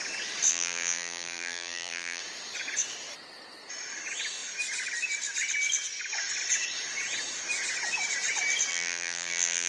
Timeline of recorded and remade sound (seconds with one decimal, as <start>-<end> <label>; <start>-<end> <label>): 0.0-0.5 recorded; 0.5-2.2 remade; 2.2-8.7 recorded; 8.7-9.7 remade